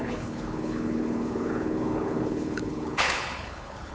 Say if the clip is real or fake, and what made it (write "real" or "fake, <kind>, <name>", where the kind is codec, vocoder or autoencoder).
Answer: fake, codec, HILCodec